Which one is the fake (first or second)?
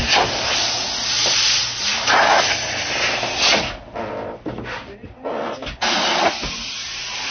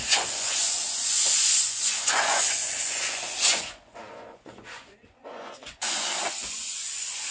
second